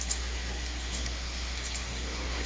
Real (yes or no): no